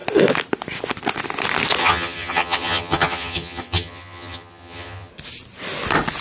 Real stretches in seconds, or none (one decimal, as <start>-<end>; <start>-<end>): 0.0-1.8; 5.1-6.2